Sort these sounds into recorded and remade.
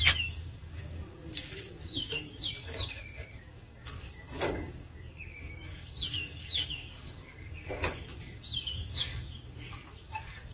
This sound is remade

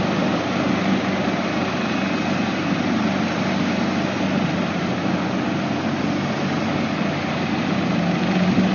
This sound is recorded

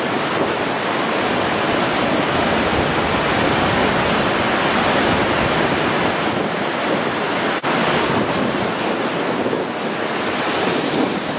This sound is recorded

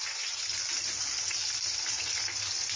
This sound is recorded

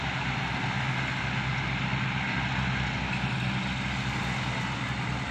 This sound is recorded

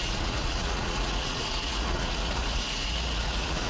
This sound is remade